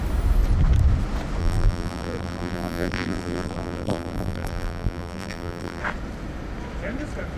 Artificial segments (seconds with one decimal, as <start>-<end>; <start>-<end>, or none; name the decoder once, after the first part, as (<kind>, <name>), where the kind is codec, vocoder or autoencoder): 1.4-5.8 (vocoder, BigVGAN v2)